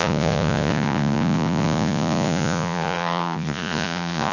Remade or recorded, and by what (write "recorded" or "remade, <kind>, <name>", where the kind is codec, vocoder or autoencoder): remade, vocoder, Vocos